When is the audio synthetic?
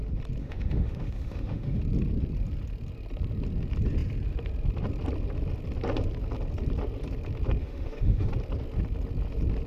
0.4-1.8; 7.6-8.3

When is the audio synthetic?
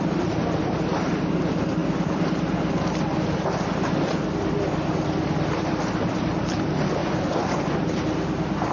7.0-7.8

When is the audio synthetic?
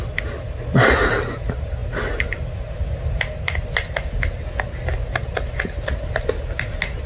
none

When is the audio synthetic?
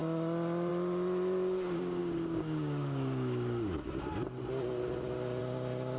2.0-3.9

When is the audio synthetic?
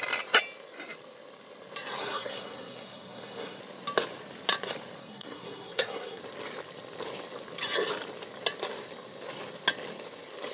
2.0-3.6; 5.0-6.2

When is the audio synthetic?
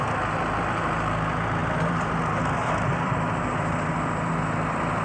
1.6-2.2; 2.6-4.3